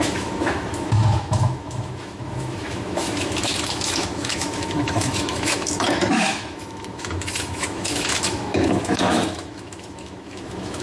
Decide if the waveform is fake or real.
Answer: fake